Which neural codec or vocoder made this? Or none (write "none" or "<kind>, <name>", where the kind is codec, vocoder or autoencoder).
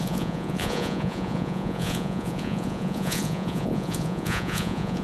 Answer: vocoder, Vocos